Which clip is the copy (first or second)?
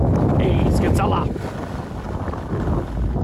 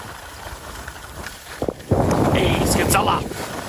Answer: second